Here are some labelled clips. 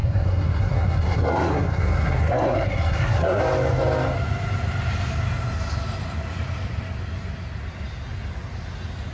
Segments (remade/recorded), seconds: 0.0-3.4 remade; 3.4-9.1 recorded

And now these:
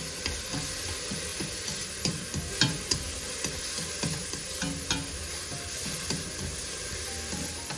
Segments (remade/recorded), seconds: 0.0-7.8 recorded

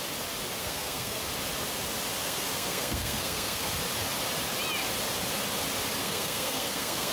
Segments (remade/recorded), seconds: 0.0-0.6 recorded; 0.6-1.2 remade; 1.2-2.2 recorded; 2.2-3.7 remade; 3.7-6.0 recorded; 6.0-7.1 remade

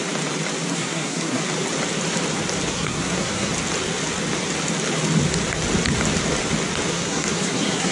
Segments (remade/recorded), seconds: 0.0-0.7 recorded; 0.7-1.4 remade; 1.4-2.7 recorded; 2.7-3.5 remade; 3.5-6.9 recorded; 6.9-7.9 remade

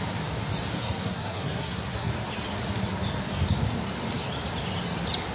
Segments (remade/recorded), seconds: 0.0-0.8 recorded; 0.8-2.1 remade; 2.1-5.3 recorded

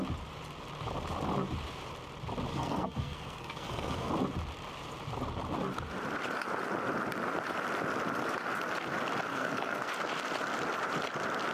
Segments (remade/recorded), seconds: 0.0-2.5 recorded; 2.5-4.1 remade; 4.1-9.3 recorded; 9.3-9.9 remade; 9.9-11.5 recorded